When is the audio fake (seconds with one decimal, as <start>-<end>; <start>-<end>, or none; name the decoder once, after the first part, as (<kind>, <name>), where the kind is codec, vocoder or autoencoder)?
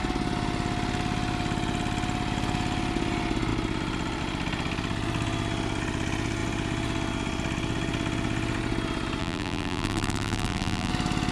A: 9.2-10.9 (vocoder, BigVGAN v2)